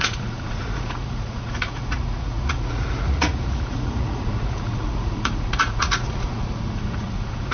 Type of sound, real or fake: fake